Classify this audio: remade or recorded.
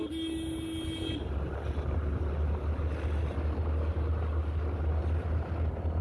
recorded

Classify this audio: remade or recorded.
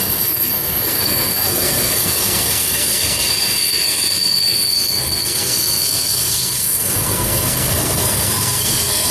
remade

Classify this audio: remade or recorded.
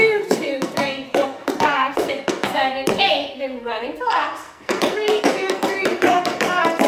remade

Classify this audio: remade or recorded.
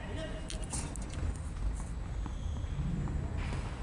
recorded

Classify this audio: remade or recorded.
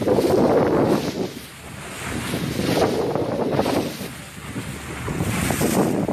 recorded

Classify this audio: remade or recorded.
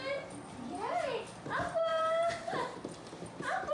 recorded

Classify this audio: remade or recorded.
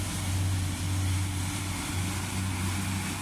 recorded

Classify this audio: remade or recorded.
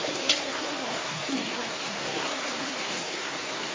remade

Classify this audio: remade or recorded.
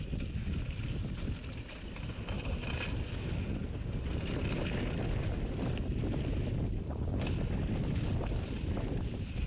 recorded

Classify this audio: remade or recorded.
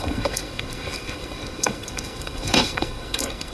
remade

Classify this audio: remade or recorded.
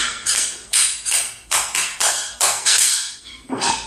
remade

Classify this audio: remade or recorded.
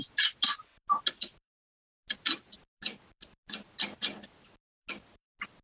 recorded